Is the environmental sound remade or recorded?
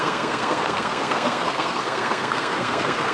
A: remade